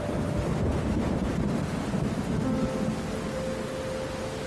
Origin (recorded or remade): recorded